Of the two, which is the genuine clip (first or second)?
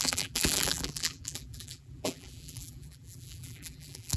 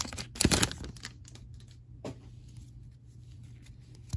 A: second